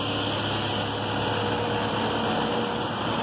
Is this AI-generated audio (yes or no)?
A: no